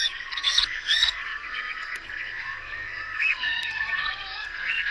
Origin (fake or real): fake